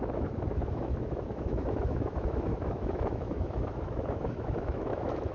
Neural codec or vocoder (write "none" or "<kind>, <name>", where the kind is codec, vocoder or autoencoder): autoencoder, DAC-VAE